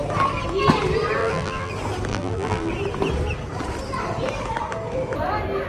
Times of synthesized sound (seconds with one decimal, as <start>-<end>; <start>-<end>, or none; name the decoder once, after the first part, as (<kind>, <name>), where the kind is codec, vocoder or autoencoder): 1.2-1.7 (vocoder, BigVGAN v2); 2.1-2.7